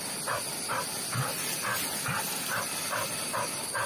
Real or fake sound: real